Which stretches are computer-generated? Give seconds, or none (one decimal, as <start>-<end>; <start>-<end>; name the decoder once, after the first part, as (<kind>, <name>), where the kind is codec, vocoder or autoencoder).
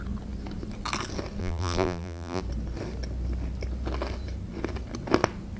1.4-2.4 (vocoder, BigVGAN v2)